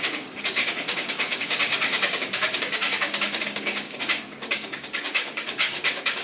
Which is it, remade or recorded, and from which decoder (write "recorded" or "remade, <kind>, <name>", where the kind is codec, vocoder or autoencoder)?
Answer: remade, codec, DAC